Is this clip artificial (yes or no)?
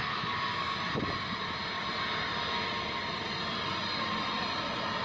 no